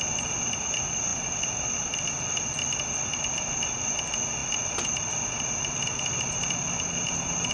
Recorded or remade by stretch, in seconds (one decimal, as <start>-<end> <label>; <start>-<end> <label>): 0.0-7.5 recorded